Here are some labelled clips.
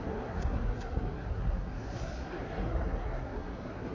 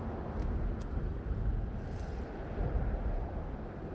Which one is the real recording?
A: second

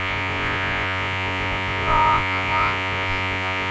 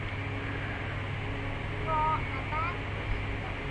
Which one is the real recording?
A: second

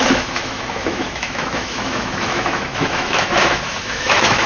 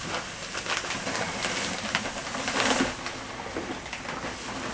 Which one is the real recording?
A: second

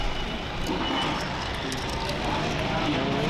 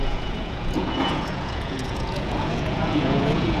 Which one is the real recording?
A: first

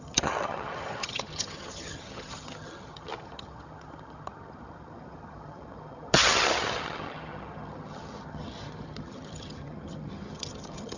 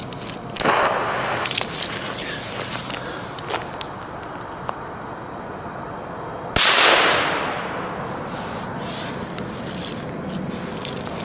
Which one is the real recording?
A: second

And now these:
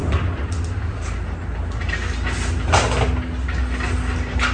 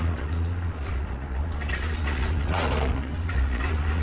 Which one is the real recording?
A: first